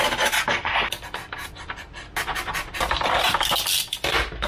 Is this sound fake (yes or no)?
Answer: no